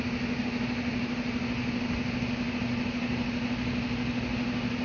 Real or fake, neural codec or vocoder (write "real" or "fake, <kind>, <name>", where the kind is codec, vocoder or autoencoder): real